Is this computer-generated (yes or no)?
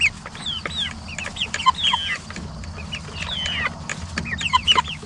no